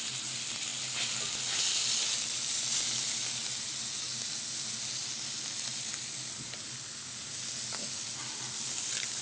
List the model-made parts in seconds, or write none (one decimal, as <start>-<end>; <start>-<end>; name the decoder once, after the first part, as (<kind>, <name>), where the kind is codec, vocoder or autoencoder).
none